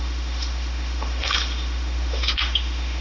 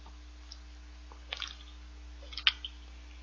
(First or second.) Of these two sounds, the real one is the second